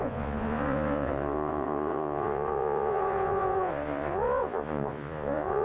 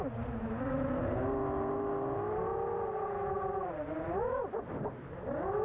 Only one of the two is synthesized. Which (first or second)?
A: first